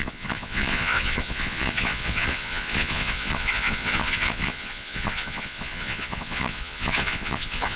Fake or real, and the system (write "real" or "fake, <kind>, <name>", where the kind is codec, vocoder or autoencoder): fake, vocoder, Vocos